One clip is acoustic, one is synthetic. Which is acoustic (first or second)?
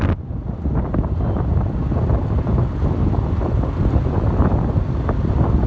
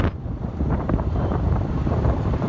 first